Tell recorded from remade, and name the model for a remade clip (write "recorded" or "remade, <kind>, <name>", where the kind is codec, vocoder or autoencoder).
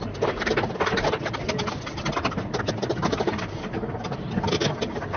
recorded